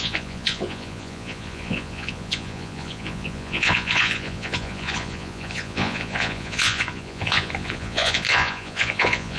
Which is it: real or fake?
fake